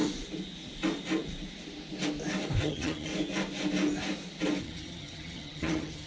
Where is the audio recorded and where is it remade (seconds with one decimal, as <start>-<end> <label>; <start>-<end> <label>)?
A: 0.0-2.6 recorded; 2.6-3.1 remade; 3.1-4.6 recorded; 4.6-6.1 remade